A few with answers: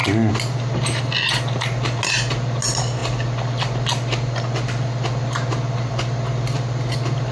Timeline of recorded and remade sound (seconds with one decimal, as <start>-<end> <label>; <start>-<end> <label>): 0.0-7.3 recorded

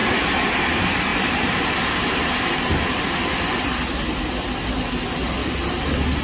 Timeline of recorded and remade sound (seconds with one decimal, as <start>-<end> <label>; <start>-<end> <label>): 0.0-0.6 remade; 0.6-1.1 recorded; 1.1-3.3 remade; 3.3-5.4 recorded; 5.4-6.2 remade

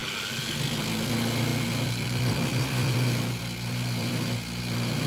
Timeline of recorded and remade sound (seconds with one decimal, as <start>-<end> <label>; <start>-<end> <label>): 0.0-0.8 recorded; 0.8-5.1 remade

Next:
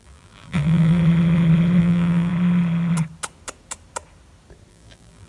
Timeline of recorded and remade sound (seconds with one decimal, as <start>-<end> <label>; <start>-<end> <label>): 0.0-1.0 remade; 1.0-1.8 recorded; 1.8-2.3 remade; 2.3-4.7 recorded; 4.7-5.3 remade